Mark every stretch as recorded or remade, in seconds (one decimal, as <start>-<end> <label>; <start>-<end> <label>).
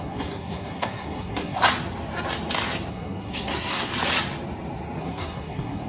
0.0-1.6 remade; 1.6-2.9 recorded; 2.9-3.9 remade; 3.9-5.0 recorded; 5.0-5.9 remade